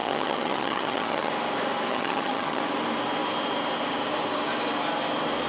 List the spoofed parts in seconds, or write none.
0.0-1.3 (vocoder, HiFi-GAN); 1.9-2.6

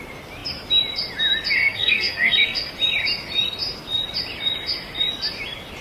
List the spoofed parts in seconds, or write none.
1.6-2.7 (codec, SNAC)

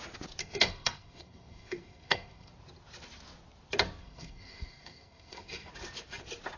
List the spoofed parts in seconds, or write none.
0.4-2.5 (codec, SNAC); 4.0-5.7

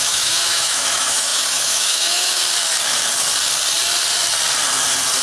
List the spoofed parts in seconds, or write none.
0.0-2.4 (autoencoder, DAC-VAE)

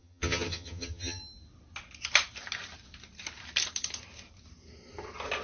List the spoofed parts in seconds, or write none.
0.0-1.2 (vocoder, HiFi-GAN)